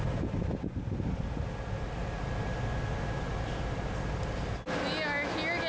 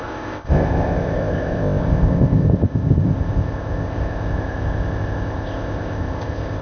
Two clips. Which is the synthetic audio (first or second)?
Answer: second